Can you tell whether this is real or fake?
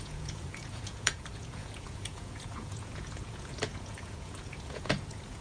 fake